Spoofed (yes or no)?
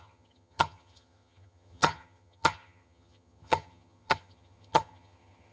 yes